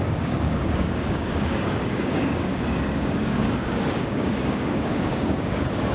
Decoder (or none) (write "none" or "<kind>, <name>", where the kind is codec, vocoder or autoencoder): codec, DAC